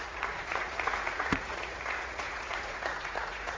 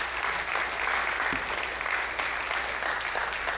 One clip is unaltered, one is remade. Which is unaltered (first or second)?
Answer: second